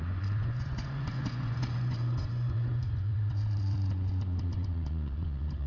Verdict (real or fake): fake